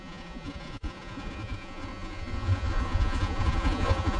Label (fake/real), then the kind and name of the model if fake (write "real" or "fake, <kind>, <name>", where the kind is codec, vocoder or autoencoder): fake, vocoder, Vocos